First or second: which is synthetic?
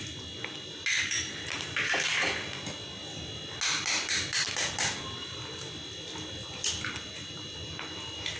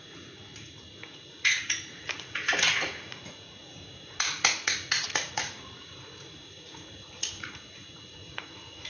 second